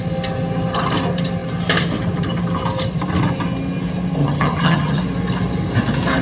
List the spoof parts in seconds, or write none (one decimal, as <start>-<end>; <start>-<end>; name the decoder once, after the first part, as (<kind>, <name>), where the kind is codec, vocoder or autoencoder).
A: 4.2-5.0 (vocoder, HiFi-GAN)